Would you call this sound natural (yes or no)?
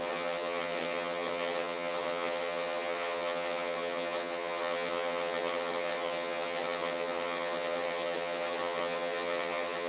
no